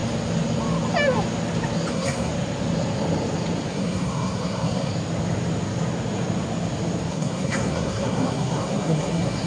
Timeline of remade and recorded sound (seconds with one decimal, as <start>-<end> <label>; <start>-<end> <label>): 0.0-1.9 recorded; 1.9-2.3 remade; 2.3-3.7 recorded; 3.7-4.9 remade; 4.9-7.1 recorded; 7.1-9.5 remade